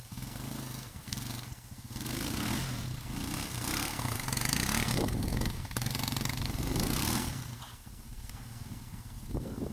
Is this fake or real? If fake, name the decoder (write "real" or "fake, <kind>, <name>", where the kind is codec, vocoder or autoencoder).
fake, codec, SNAC